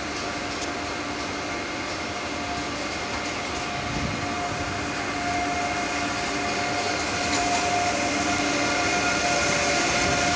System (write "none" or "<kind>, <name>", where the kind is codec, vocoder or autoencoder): none